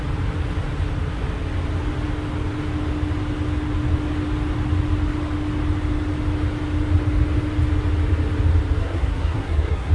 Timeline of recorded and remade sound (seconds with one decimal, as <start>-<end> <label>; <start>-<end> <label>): 0.0-8.8 recorded; 8.8-9.9 remade